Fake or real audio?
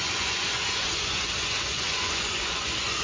fake